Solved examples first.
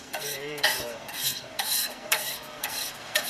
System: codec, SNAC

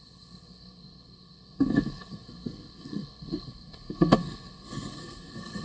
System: codec, SNAC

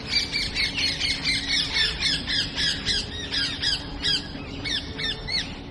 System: none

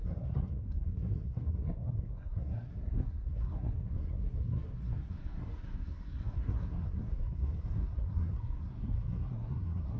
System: codec, SNAC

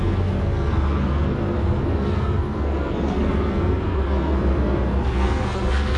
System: codec, SNAC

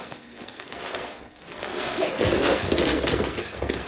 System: codec, SNAC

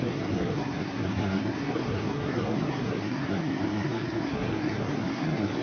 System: codec, SNAC